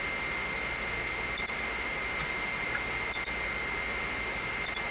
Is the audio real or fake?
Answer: real